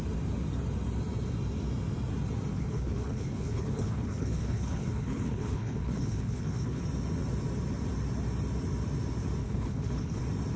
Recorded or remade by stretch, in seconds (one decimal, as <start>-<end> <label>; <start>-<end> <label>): 0.0-2.5 recorded; 2.5-6.8 remade; 6.8-9.4 recorded; 9.4-10.2 remade; 10.2-10.6 recorded